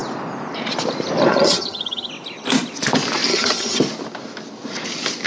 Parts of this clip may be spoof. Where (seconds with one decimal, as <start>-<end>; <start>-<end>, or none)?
1.3-2.1; 3.3-3.8